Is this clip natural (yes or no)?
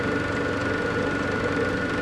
yes